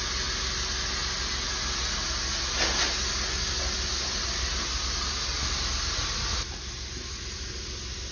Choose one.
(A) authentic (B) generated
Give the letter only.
A